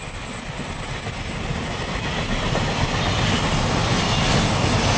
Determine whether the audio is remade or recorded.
recorded